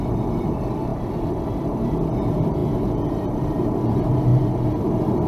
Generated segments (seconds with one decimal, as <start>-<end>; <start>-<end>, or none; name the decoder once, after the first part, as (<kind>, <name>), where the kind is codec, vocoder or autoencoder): 0.0-0.9 (vocoder, BigVGAN v2); 1.6-2.6; 3.2-4.3; 4.8-5.3